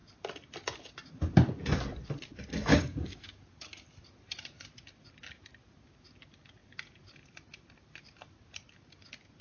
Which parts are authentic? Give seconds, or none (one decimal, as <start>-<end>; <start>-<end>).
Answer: 0.0-2.7; 3.4-9.4